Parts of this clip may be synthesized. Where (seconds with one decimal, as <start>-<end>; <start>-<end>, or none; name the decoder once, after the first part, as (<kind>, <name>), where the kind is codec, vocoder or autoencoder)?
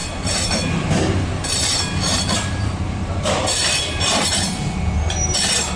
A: 0.0-0.9 (vocoder, BigVGAN v2); 1.6-5.1